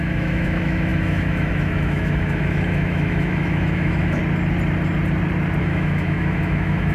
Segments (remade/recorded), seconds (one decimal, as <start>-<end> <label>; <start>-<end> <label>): 0.0-4.2 remade; 4.2-5.6 recorded; 5.6-6.9 remade